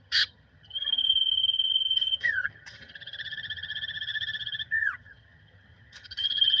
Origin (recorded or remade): remade